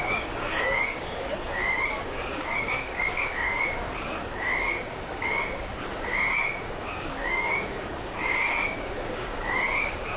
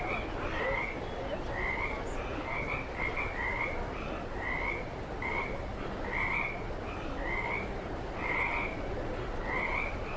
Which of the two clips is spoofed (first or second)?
first